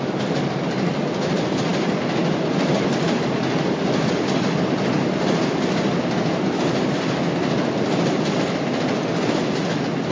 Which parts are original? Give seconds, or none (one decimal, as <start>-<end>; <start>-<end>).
0.0-10.1